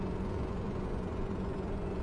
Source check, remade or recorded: remade